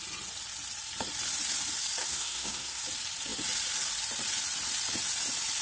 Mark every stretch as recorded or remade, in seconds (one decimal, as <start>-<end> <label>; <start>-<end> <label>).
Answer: 0.0-2.0 recorded; 2.0-2.8 remade; 2.8-5.6 recorded